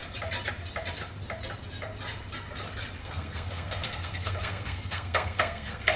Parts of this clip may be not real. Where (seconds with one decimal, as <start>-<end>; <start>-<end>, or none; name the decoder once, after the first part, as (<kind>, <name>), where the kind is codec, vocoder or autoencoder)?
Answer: 3.0-6.0 (codec, SNAC)

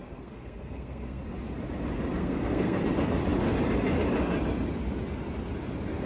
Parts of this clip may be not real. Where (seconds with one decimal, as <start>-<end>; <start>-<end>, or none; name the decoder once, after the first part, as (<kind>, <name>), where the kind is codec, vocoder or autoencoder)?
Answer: 0.0-1.2 (codec, SNAC); 2.2-2.8

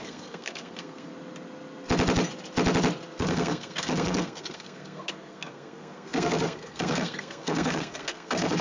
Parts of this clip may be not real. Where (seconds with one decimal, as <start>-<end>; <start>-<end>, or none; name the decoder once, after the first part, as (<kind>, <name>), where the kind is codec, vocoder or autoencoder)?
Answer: 0.0-1.1 (codec, SNAC); 3.2-8.6